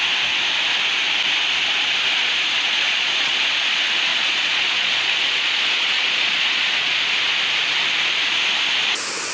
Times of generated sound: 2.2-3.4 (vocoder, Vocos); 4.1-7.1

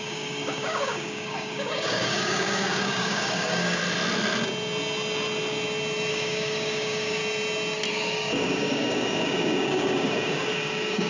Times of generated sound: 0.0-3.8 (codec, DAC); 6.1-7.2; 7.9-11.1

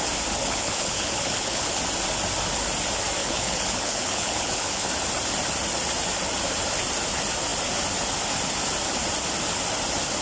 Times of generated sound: 0.4-1.8 (codec, HILCodec); 3.2-4.9

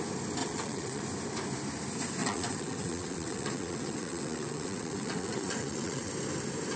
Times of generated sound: 0.4-1.0 (vocoder, WaveNeXt); 2.2-6.1

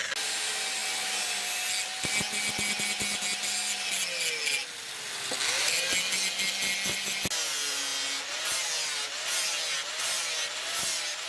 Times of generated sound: none